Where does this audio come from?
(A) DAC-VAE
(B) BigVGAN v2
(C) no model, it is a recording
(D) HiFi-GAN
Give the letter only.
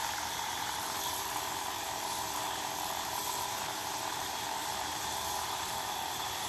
B